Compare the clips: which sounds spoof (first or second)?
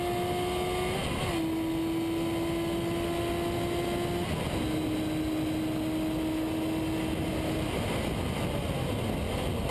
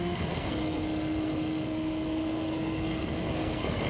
second